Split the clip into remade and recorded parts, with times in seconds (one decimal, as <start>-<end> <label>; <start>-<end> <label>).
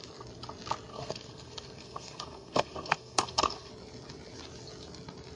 0.0-0.9 recorded; 0.9-3.7 remade; 3.7-5.4 recorded